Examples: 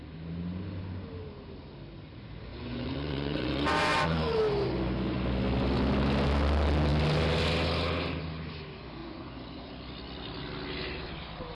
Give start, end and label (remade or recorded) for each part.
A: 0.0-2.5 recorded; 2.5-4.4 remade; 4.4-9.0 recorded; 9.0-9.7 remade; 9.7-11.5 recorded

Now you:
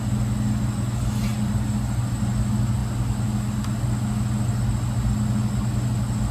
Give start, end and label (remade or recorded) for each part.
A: 0.0-6.3 recorded

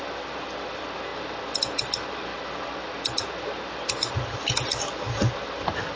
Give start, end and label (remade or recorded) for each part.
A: 0.0-6.0 recorded

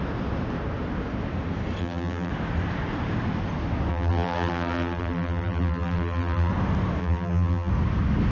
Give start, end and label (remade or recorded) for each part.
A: 0.0-1.8 recorded; 1.8-2.3 remade; 2.3-3.9 recorded; 3.9-6.5 remade; 6.5-7.0 recorded; 7.0-7.7 remade; 7.7-8.3 recorded

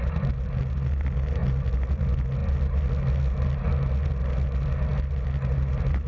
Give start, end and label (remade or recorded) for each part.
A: 0.0-6.1 recorded

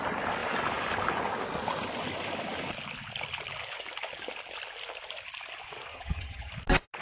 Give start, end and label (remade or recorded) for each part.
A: 0.0-5.9 recorded; 5.9-6.5 remade; 6.5-7.0 recorded

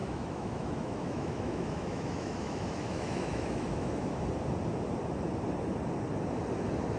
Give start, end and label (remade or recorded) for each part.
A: 0.0-4.2 remade; 4.2-7.0 recorded